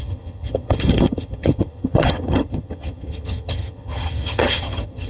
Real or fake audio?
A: fake